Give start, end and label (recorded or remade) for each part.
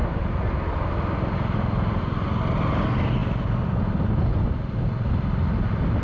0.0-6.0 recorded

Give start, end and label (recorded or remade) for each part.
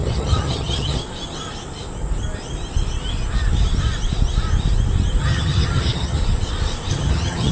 0.0-1.0 remade; 1.0-5.2 recorded; 5.2-6.2 remade; 6.2-6.9 recorded; 6.9-7.5 remade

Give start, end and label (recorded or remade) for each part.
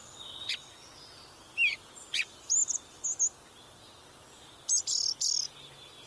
0.0-6.1 recorded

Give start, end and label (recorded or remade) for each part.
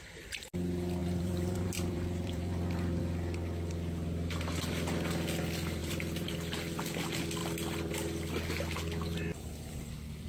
0.0-1.0 recorded; 1.0-3.0 remade; 3.0-5.8 recorded; 5.8-6.3 remade; 6.3-7.4 recorded; 7.4-7.9 remade; 7.9-10.3 recorded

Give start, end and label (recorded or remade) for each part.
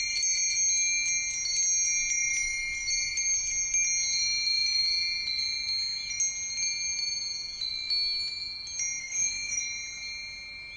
0.0-9.0 recorded; 9.0-9.6 remade; 9.6-10.8 recorded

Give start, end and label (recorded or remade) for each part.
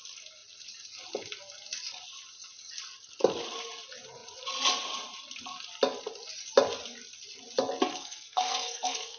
0.0-7.9 recorded; 7.9-9.2 remade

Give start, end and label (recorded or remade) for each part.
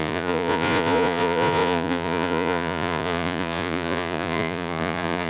0.0-5.3 remade